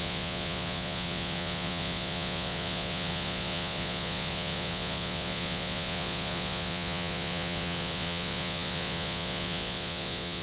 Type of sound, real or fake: fake